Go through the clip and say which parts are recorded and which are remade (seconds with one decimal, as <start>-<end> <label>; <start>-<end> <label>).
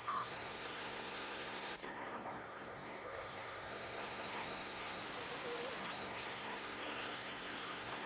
0.0-5.0 remade; 5.0-5.8 recorded; 5.8-8.1 remade